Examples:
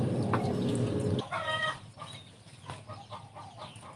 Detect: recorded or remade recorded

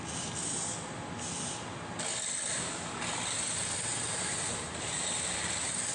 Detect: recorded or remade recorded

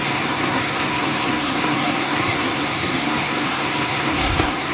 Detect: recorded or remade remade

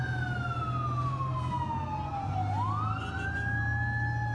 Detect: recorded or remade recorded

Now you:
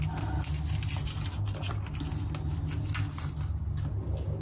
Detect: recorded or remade recorded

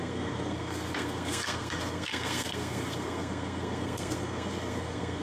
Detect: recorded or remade remade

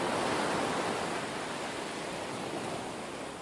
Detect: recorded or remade recorded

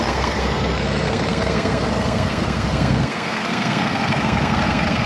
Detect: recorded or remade remade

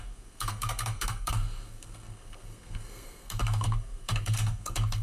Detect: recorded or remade remade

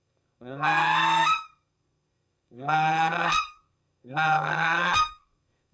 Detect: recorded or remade remade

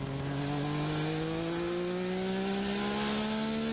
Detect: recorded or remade recorded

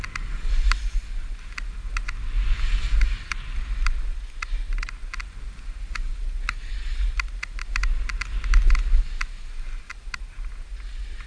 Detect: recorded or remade recorded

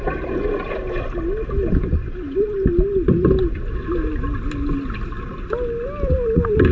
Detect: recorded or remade recorded